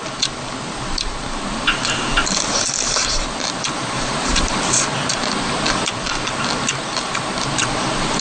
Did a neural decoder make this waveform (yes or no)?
no